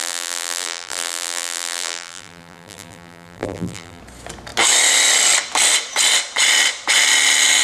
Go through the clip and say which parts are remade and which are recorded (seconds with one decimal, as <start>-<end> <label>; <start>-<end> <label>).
0.0-4.0 remade; 4.0-7.6 recorded